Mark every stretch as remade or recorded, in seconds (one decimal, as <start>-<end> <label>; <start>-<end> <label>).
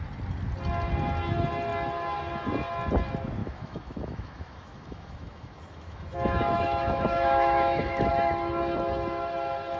0.0-3.4 recorded; 3.4-8.1 remade; 8.1-9.8 recorded